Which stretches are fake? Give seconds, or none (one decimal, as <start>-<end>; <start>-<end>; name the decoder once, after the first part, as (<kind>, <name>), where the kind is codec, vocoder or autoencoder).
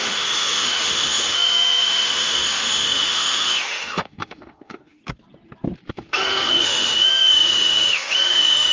0.0-5.0 (autoencoder, DAC-VAE); 5.9-8.7